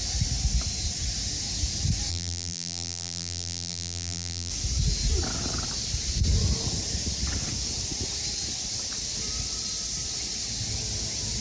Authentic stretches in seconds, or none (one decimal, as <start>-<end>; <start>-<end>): 0.0-2.1; 4.5-11.4